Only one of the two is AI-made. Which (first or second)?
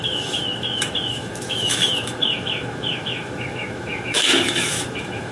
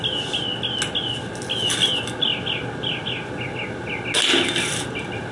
first